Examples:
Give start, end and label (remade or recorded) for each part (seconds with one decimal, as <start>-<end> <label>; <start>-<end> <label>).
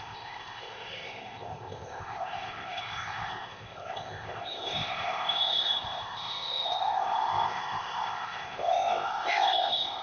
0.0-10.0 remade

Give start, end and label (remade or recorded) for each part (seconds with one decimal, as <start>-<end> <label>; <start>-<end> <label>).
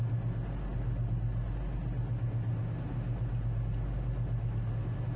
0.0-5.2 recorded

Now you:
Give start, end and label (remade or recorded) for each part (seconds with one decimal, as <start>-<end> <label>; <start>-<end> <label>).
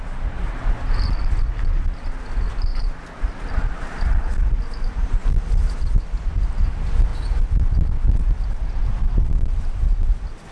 0.0-10.5 recorded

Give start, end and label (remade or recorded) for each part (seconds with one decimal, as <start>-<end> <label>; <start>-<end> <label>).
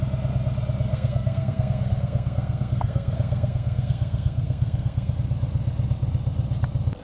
0.0-0.9 recorded; 0.9-5.1 remade; 5.1-7.0 recorded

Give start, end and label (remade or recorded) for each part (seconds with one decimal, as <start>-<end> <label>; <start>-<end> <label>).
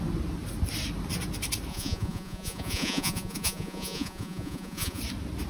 0.0-1.7 recorded; 1.7-5.0 remade; 5.0-5.5 recorded